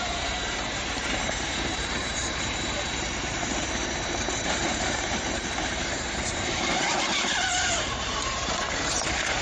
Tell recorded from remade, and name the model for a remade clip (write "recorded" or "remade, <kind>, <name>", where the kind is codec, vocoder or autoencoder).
remade, vocoder, BigVGAN v2